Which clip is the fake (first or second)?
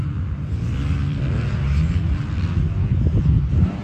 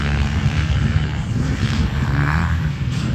second